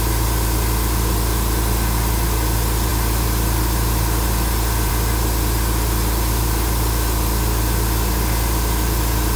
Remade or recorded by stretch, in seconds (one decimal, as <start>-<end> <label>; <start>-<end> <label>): 0.0-9.4 recorded